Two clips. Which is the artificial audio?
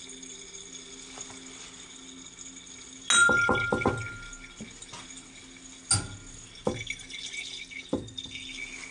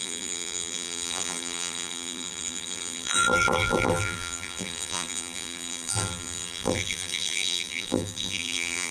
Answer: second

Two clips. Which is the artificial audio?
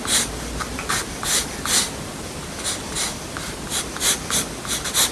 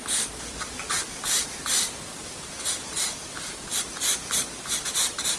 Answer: second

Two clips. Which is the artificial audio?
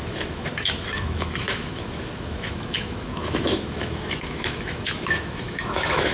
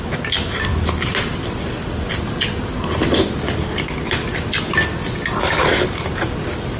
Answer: first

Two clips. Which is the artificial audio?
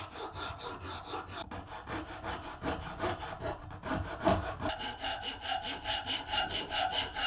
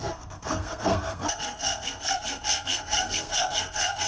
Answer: second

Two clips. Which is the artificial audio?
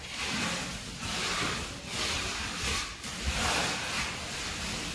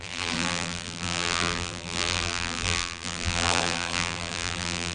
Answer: second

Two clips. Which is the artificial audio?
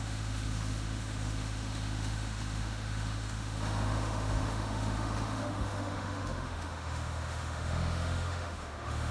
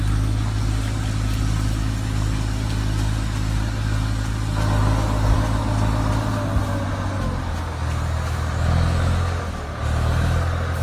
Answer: first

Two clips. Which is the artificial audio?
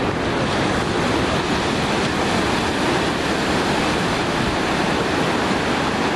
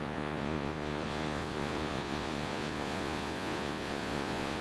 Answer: second